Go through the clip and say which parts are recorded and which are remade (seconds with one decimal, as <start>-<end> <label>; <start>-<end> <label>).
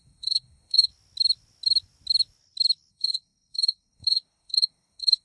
0.0-0.9 remade; 0.9-2.9 recorded; 2.9-5.2 remade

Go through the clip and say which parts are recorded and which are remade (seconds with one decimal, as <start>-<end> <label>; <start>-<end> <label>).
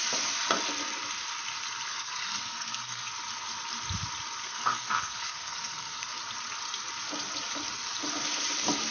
0.0-1.9 recorded; 1.9-3.1 remade; 3.1-4.4 recorded; 4.4-6.1 remade; 6.1-8.9 recorded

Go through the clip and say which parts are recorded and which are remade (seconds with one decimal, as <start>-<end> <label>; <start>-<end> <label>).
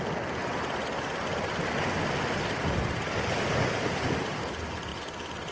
0.0-5.5 recorded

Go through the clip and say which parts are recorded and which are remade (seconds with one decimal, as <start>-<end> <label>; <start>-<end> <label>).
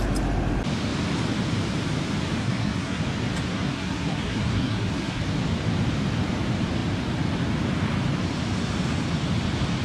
0.0-2.4 recorded; 2.4-3.0 remade; 3.0-3.5 recorded; 3.5-5.2 remade; 5.2-9.8 recorded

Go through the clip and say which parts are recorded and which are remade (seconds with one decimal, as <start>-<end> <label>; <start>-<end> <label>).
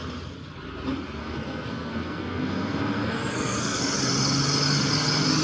0.0-1.2 recorded; 1.2-3.8 remade; 3.8-5.4 recorded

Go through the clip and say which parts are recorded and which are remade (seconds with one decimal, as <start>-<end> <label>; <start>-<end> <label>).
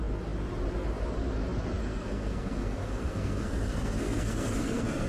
0.0-1.8 recorded; 1.8-5.1 remade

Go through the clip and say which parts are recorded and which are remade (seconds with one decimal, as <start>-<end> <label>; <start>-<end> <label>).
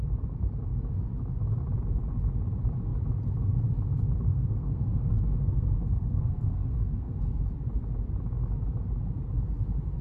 0.0-4.3 recorded; 4.3-7.4 remade; 7.4-10.0 recorded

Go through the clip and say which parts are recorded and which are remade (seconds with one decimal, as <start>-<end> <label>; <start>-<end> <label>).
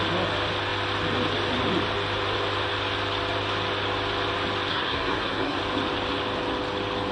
0.0-4.7 recorded; 4.7-5.6 remade; 5.6-7.1 recorded